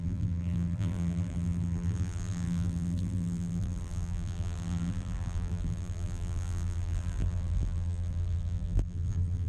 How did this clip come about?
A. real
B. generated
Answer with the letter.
B